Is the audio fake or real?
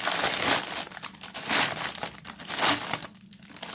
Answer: real